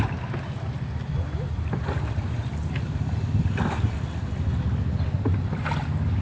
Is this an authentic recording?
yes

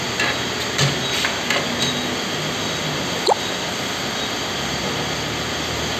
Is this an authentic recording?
yes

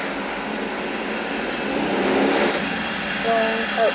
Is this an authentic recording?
yes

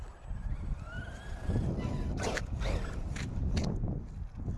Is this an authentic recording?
yes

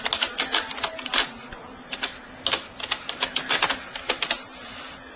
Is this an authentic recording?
yes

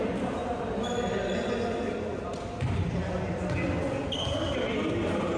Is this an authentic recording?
yes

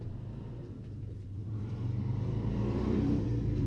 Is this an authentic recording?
no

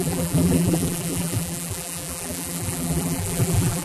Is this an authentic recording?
no